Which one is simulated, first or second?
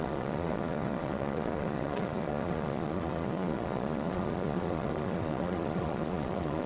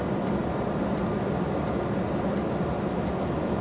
first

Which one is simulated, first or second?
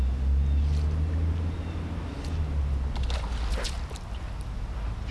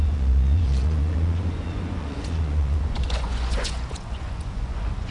second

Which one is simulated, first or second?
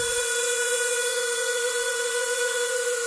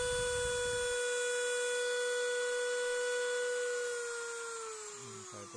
first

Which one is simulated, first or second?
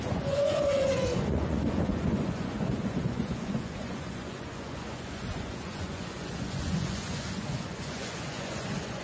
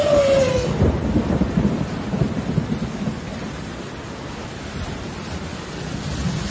first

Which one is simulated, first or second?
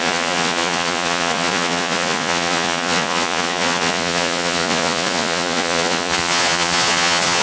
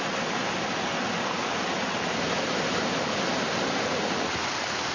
first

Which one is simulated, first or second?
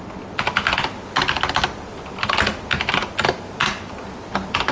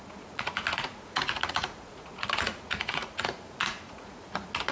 second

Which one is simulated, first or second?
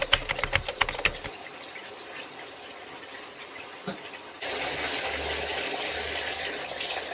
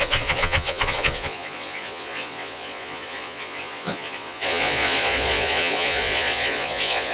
second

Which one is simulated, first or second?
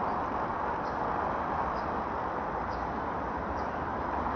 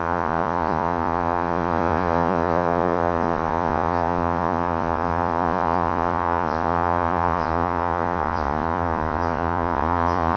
second